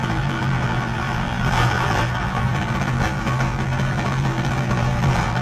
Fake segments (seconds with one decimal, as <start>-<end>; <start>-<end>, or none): 0.0-5.4